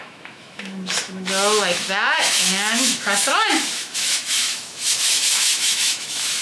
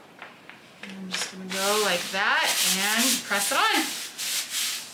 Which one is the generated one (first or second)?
first